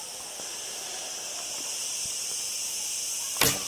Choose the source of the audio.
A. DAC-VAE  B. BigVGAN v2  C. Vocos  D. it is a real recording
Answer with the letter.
D